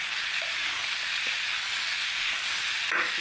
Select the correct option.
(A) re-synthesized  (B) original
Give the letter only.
B